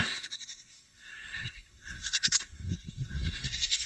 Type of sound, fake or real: fake